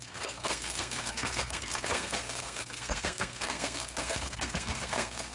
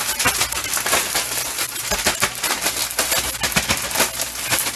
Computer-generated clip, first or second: first